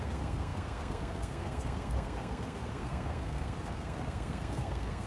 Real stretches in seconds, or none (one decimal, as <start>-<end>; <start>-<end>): none